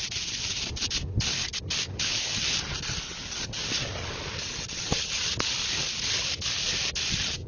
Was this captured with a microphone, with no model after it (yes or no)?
no